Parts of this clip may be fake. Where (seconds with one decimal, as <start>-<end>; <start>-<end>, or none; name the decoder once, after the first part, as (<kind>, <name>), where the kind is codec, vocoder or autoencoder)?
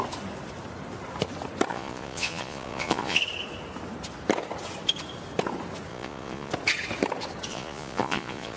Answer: 1.7-3.2 (vocoder, Vocos); 5.9-6.5; 7.5-8.6